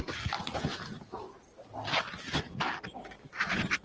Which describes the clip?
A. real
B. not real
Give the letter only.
A